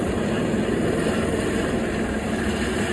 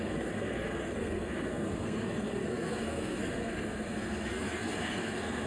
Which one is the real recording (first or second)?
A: first